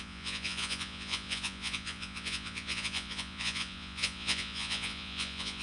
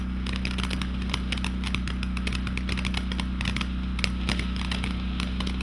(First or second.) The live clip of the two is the second